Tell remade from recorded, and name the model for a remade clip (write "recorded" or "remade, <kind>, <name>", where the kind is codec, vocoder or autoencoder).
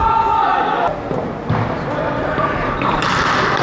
recorded